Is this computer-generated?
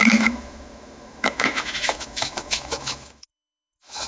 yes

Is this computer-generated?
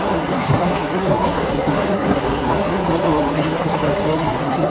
yes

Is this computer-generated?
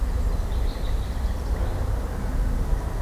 no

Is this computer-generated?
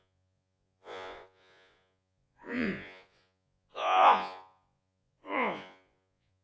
yes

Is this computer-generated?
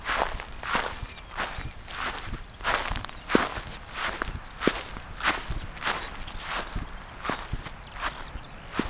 no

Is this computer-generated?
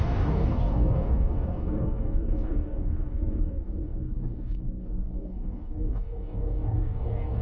yes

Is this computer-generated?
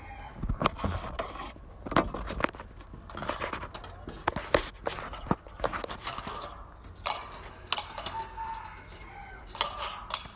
no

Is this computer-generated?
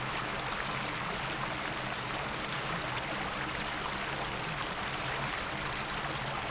no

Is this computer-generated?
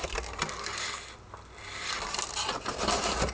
no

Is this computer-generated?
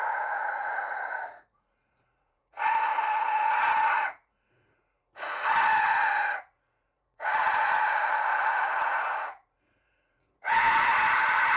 yes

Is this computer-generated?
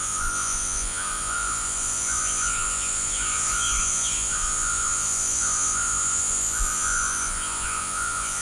yes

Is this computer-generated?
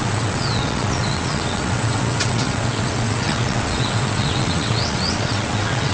yes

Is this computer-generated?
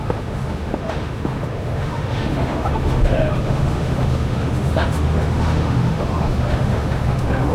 yes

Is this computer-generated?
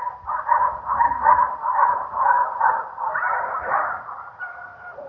yes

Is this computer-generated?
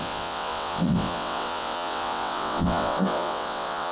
yes